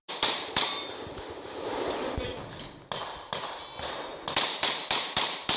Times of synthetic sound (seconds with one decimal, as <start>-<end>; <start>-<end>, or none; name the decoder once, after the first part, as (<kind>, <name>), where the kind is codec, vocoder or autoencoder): none